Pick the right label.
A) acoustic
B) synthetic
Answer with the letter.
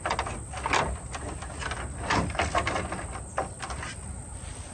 A